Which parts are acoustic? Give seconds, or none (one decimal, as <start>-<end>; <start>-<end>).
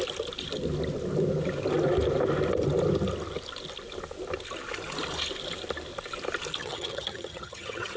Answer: 0.0-6.6